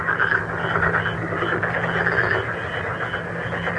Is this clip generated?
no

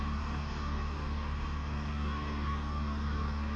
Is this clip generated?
yes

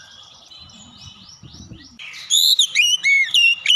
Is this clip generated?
yes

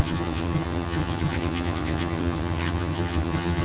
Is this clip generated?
yes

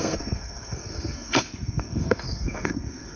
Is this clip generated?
yes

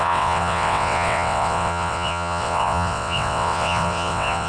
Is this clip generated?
yes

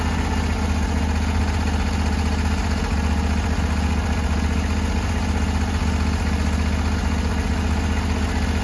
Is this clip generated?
no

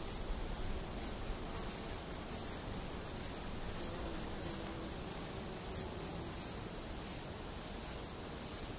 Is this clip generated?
no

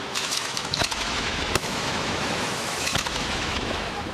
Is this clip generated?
yes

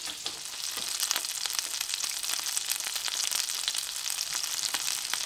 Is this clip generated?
no